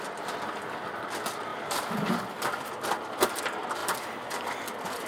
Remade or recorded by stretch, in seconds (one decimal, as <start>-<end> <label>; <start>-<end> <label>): 0.0-1.5 recorded; 1.5-3.4 remade; 3.4-3.8 recorded; 3.8-5.1 remade